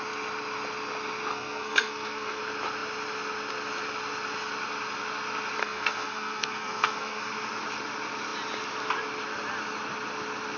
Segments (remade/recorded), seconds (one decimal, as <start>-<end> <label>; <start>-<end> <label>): 0.0-1.3 recorded; 1.3-2.4 remade; 2.4-5.6 recorded; 5.6-7.3 remade; 7.3-10.6 recorded